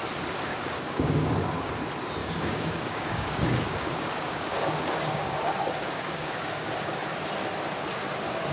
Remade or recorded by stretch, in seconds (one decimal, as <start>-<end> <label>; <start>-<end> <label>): 0.0-0.5 recorded; 0.5-1.7 remade; 1.7-2.2 recorded; 2.2-7.0 remade; 7.0-8.5 recorded